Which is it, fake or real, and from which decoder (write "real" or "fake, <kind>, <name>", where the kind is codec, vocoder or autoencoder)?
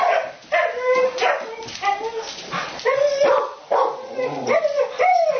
fake, vocoder, BigVGAN v2